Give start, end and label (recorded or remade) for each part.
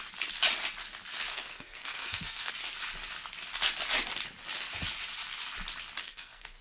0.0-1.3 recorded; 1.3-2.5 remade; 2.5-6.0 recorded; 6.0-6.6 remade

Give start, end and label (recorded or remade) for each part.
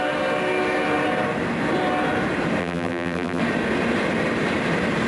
0.0-2.6 recorded; 2.6-3.4 remade; 3.4-5.1 recorded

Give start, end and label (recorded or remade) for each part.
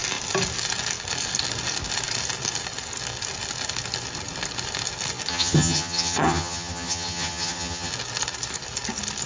0.0-5.3 recorded; 5.3-7.9 remade; 7.9-9.3 recorded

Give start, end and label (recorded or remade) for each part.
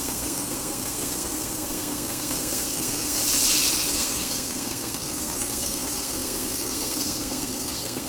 0.0-3.2 remade; 3.2-3.9 recorded; 3.9-8.1 remade